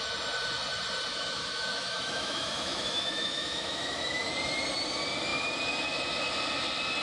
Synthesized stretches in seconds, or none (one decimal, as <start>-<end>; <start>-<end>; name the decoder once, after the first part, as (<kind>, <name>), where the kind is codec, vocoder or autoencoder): 1.1-4.3 (autoencoder, DAC-VAE)